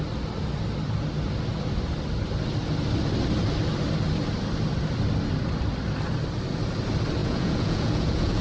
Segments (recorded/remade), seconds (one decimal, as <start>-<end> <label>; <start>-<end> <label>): 0.0-7.2 recorded; 7.2-8.4 remade